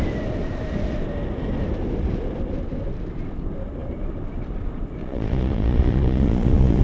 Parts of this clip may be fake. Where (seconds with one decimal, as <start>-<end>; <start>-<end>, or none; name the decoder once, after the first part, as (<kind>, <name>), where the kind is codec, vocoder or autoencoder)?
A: 5.0-6.8 (vocoder, Vocos)